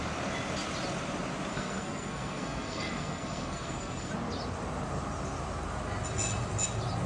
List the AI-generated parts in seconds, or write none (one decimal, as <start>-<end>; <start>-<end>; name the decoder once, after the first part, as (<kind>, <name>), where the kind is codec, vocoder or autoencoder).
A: 1.5-4.1 (codec, SNAC)